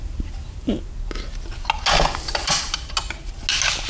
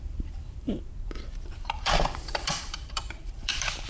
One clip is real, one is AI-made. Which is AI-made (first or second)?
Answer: second